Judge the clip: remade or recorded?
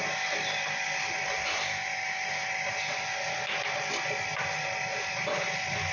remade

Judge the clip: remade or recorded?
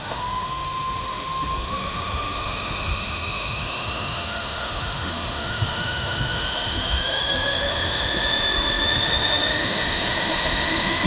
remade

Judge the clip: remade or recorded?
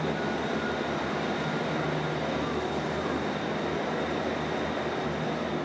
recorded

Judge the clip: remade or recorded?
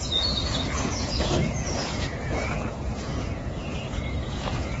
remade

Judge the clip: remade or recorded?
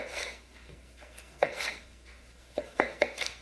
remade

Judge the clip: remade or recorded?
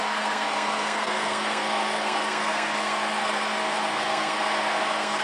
remade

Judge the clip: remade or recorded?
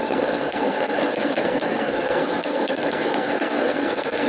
remade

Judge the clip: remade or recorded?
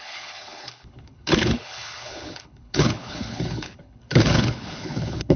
remade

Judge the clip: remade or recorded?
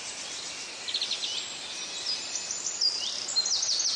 recorded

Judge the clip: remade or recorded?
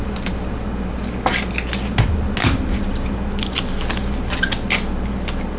recorded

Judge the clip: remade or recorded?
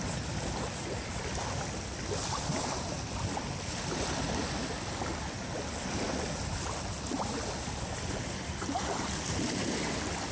recorded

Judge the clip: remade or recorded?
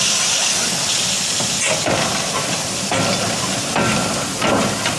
recorded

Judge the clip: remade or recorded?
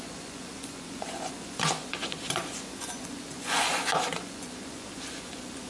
remade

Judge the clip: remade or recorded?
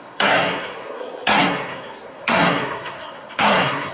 remade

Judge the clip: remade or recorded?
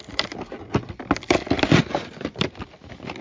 recorded